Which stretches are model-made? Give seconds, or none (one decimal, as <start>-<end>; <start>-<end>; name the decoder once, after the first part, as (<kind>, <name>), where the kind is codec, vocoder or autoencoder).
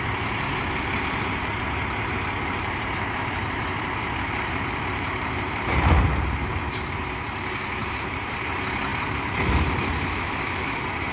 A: 1.4-6.7 (vocoder, BigVGAN v2); 7.8-8.4